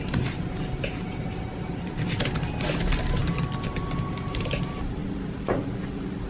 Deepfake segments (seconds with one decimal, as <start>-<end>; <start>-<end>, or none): none